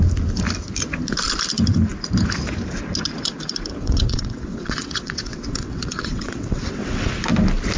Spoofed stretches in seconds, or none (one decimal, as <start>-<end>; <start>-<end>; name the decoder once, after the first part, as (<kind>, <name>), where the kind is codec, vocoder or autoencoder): 3.8-7.1 (vocoder, WaveNeXt)